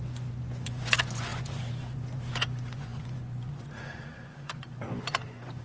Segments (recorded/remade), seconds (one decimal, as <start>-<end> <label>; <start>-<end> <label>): 0.0-5.6 remade